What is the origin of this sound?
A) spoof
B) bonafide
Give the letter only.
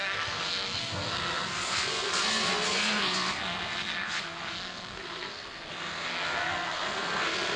A